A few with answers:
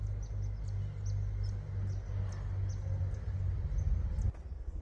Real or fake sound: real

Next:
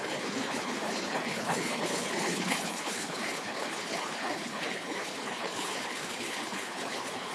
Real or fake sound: fake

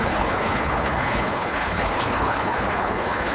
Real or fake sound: fake